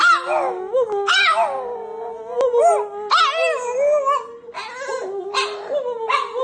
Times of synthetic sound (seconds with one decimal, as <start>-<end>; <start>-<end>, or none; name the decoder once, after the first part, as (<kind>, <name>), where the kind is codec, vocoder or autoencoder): none